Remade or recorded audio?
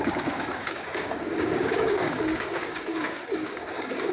remade